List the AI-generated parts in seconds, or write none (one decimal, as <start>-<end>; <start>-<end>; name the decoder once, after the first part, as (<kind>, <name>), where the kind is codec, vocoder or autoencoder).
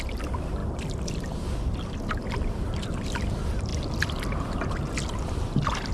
none